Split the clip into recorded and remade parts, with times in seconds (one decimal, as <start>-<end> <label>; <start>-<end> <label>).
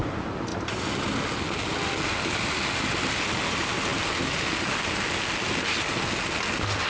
0.0-6.9 recorded